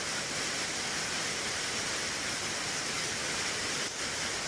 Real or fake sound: real